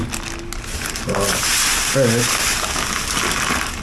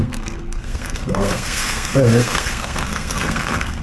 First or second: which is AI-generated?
second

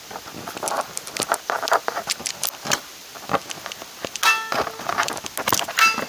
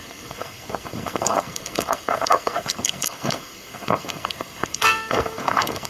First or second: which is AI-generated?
second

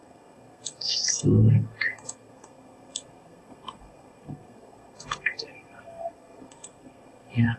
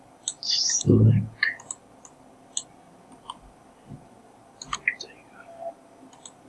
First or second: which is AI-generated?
first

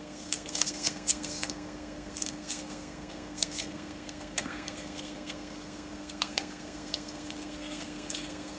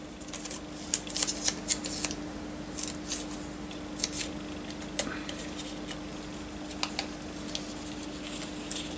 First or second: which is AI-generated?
first